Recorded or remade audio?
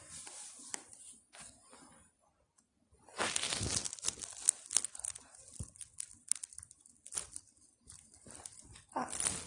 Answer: recorded